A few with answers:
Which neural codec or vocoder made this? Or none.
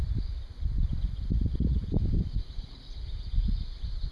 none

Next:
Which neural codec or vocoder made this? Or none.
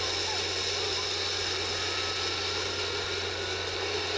none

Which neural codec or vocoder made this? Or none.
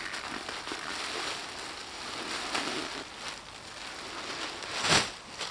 none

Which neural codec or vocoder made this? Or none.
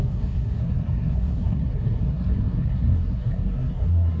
codec, SNAC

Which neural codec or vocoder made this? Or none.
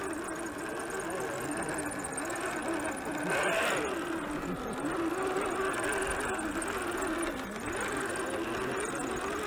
none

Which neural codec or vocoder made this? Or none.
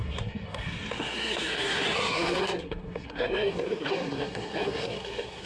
codec, SNAC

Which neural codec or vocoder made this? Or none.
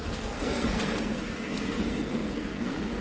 codec, SNAC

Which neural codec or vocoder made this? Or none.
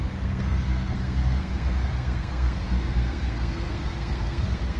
codec, SNAC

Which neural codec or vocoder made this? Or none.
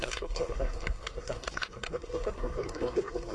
codec, SNAC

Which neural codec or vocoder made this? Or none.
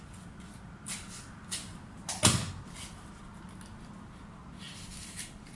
none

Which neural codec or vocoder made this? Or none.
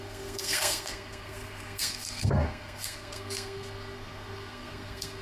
codec, SNAC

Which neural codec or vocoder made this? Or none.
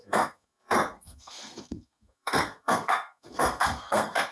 codec, SNAC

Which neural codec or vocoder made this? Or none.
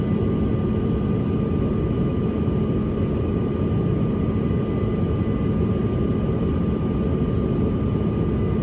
none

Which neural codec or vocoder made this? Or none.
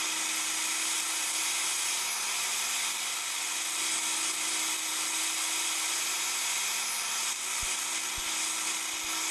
none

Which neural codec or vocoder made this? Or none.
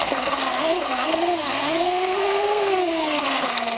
codec, SNAC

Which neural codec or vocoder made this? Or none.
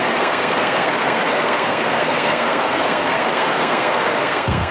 codec, SNAC